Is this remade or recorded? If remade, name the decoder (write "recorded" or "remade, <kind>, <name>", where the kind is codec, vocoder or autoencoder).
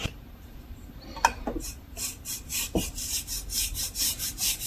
remade, vocoder, BigVGAN v2